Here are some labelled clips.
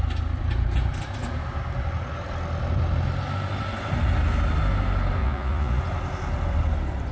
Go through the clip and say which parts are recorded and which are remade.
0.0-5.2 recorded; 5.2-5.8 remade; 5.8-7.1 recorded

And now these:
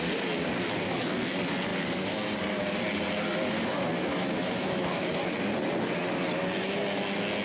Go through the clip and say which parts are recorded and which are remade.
0.0-4.0 recorded; 4.0-5.1 remade; 5.1-7.4 recorded

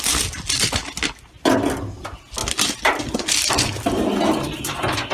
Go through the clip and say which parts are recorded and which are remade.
0.0-5.1 recorded

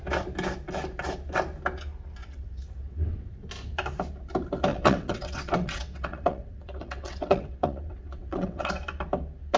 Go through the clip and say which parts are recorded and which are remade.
0.0-2.2 recorded; 2.2-3.3 remade; 3.3-4.7 recorded; 4.7-8.7 remade; 8.7-9.6 recorded

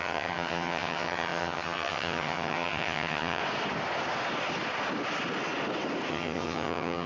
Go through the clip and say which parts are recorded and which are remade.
0.0-3.4 remade; 3.4-6.1 recorded; 6.1-7.1 remade

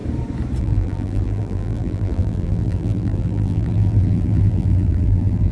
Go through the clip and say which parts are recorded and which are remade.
0.0-0.6 recorded; 0.6-5.5 remade

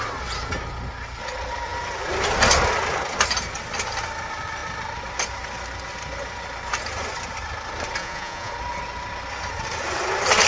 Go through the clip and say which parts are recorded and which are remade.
0.0-8.0 recorded; 8.0-8.5 remade; 8.5-10.5 recorded

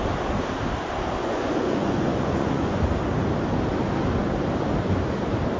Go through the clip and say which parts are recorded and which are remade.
0.0-1.2 recorded; 1.2-2.8 remade; 2.8-5.6 recorded